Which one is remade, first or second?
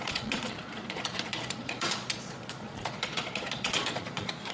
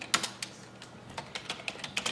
first